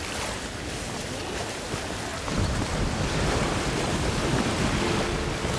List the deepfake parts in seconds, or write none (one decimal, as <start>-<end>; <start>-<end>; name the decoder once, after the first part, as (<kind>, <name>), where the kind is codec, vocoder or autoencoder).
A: none